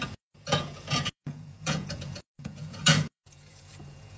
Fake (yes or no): yes